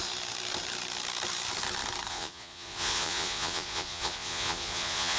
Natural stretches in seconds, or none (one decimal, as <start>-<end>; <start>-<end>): 0.0-2.1